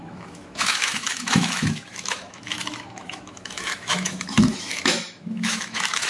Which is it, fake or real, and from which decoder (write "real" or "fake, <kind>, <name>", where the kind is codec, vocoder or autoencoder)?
fake, autoencoder, DAC-VAE